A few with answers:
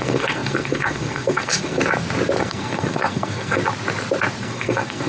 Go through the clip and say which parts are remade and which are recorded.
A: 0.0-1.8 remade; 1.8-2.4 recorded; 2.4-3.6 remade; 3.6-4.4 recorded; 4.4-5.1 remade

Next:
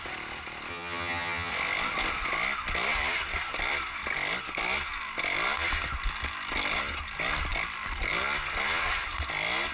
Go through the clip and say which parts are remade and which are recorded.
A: 0.0-0.7 recorded; 0.7-1.5 remade; 1.5-9.7 recorded

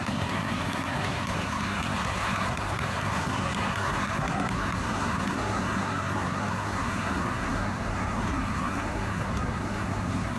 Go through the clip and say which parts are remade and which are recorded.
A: 0.0-10.4 remade

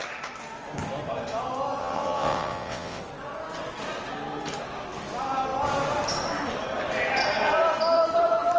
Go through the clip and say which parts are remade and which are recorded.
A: 0.0-1.8 recorded; 1.8-3.0 remade; 3.0-8.6 recorded

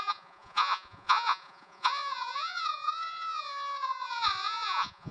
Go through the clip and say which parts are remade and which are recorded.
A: 0.0-5.1 remade

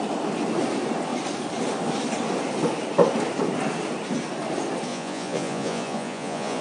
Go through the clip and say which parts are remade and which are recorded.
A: 0.0-4.9 recorded; 4.9-6.6 remade

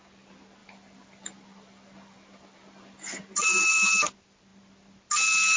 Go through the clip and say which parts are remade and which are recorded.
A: 0.0-0.6 recorded; 0.6-4.0 remade; 4.0-5.6 recorded